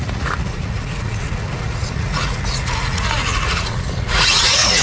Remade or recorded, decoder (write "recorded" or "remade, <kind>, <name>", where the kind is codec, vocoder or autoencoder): remade, vocoder, Vocos